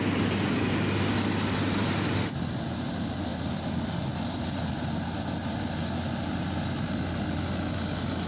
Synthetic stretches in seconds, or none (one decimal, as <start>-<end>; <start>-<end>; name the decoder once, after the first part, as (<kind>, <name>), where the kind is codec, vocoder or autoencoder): 3.3-4.8 (vocoder, BigVGAN v2)